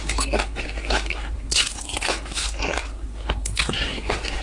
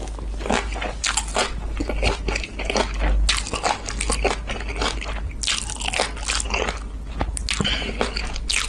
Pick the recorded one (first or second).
second